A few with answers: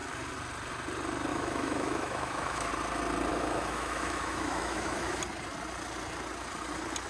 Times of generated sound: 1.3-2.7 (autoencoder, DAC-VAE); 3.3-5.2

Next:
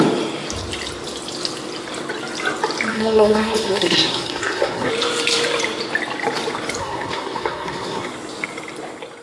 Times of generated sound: 2.9-4.9 (codec, SNAC); 6.8-8.1

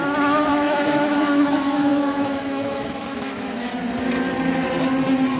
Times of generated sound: 0.5-3.7 (autoencoder, DAC-VAE)

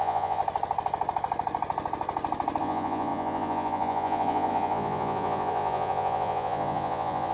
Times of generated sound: 0.0-0.4 (vocoder, Vocos); 2.6-7.3